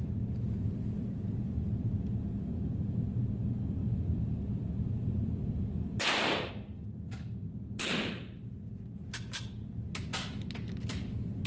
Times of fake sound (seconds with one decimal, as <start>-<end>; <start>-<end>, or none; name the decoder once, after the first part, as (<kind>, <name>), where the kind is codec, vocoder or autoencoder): 3.8-6.5 (vocoder, BigVGAN v2)